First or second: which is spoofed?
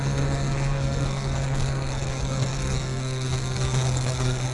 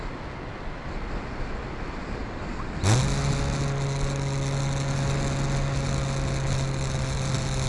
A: first